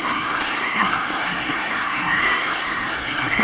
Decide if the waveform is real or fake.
fake